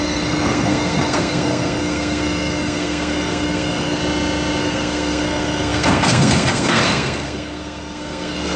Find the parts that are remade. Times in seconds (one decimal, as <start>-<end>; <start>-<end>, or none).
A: 0.0-4.0; 4.6-8.6